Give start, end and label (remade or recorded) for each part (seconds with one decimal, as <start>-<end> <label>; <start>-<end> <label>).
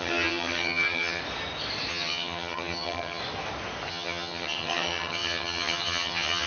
0.0-1.2 remade; 1.2-1.9 recorded; 1.9-3.2 remade; 3.2-3.9 recorded; 3.9-6.5 remade